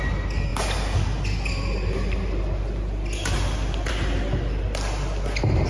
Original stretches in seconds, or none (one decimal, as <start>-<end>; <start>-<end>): 0.0-5.7